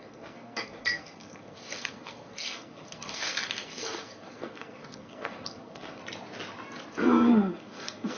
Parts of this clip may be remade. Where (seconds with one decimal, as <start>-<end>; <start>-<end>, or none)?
0.0-6.0; 6.9-8.2